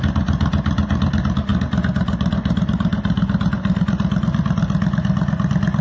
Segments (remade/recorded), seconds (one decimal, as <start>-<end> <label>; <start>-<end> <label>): 0.0-5.8 recorded